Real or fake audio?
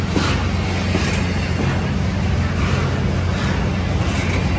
real